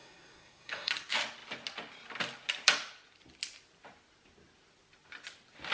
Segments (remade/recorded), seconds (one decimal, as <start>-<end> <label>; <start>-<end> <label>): 0.0-0.9 remade; 0.9-5.7 recorded